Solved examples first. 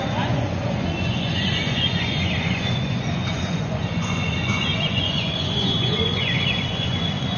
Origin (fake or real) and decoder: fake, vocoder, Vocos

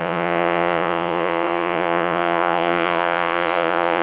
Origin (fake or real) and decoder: fake, vocoder, Vocos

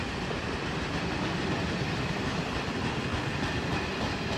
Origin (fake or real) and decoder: real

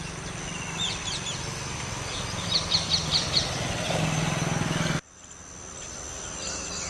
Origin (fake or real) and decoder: real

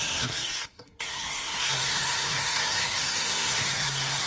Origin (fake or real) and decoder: fake, codec, SNAC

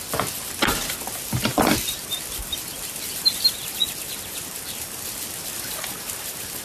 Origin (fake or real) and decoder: real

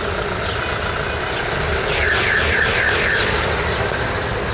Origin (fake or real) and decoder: real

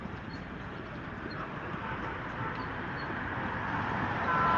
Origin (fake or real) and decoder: fake, vocoder, BigVGAN v2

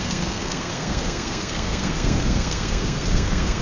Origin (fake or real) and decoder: fake, codec, SNAC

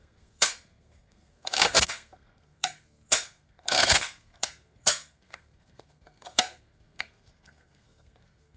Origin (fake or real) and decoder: fake, codec, SNAC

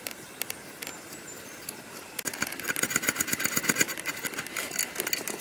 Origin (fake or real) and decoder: real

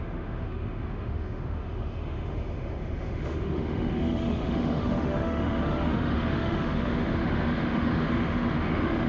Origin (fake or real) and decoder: fake, autoencoder, DAC-VAE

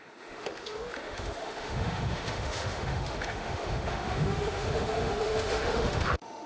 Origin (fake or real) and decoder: fake, autoencoder, DAC-VAE